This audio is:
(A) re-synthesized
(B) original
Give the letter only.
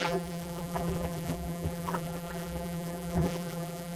A